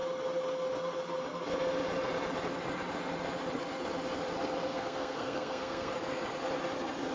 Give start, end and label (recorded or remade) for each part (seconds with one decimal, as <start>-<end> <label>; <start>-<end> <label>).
0.0-4.7 recorded; 4.7-5.9 remade; 5.9-7.1 recorded